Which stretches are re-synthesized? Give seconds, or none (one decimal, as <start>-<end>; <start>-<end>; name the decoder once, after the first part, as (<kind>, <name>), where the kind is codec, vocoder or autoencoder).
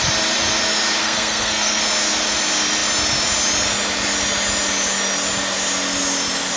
1.0-1.8 (codec, SNAC)